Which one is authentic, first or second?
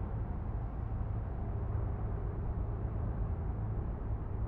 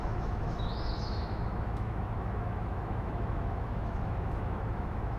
first